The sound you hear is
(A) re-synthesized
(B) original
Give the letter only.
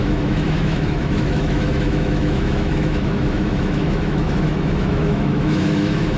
A